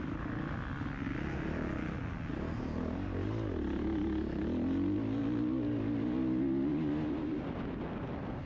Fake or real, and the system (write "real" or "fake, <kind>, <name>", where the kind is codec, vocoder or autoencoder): real